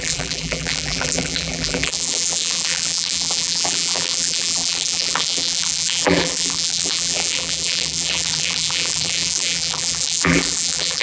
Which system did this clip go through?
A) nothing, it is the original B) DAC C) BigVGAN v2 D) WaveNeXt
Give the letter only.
C